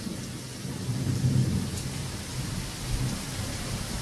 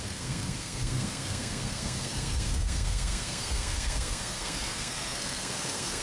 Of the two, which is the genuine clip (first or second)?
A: first